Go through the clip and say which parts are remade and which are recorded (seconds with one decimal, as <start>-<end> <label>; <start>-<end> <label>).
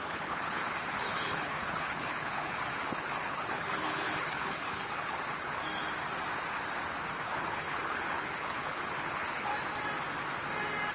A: 0.0-5.6 remade; 5.6-7.2 recorded; 7.2-9.5 remade; 9.5-10.9 recorded